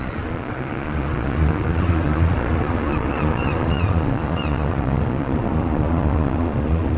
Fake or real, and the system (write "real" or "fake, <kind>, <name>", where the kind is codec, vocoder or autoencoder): fake, vocoder, Vocos